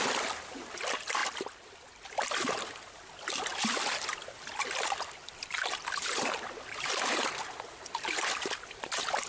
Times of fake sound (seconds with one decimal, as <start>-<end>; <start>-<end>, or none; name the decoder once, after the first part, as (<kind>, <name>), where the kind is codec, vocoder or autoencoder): 1.2-2.5 (vocoder, BigVGAN v2); 3.5-7.2